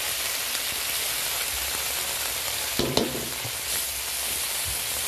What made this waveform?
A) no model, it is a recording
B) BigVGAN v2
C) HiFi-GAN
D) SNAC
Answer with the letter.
B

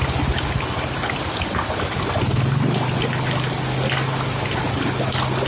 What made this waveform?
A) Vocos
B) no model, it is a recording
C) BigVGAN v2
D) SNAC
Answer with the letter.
B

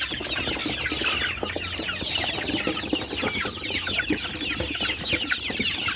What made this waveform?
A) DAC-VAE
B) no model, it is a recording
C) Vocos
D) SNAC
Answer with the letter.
B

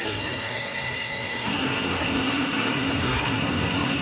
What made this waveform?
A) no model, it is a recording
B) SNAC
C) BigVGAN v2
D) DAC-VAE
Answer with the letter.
B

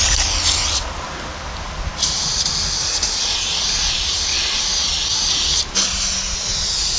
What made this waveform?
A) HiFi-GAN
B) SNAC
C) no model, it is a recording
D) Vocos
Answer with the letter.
C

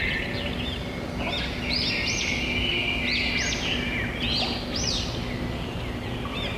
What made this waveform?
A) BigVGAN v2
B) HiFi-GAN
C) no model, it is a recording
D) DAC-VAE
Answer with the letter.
C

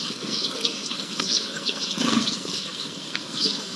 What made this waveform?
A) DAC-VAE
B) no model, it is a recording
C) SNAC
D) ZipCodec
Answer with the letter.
C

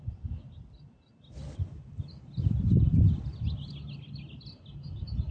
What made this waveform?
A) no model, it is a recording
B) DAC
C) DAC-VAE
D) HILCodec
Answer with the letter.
A